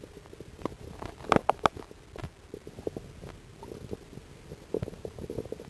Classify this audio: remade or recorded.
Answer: recorded